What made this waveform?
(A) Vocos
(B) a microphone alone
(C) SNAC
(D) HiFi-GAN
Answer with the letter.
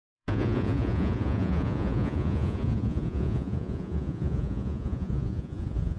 A